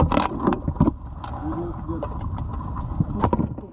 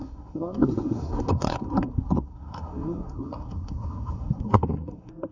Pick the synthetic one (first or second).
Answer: second